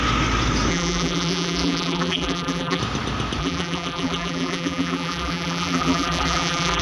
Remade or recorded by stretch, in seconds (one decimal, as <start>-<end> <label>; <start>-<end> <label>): 0.0-0.7 recorded; 0.7-2.8 remade; 2.8-3.4 recorded; 3.4-6.8 remade